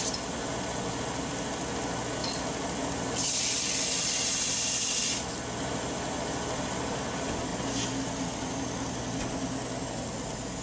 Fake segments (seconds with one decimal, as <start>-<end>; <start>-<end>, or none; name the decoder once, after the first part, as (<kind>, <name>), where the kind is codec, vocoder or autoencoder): none